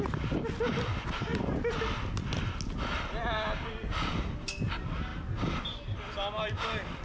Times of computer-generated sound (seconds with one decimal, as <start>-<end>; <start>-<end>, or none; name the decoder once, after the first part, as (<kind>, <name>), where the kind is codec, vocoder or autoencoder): none